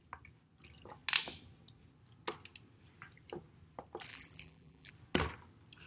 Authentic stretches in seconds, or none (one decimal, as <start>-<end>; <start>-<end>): 0.0-4.1; 4.9-5.9